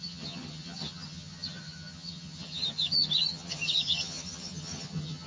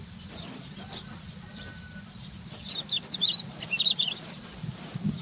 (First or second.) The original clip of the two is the second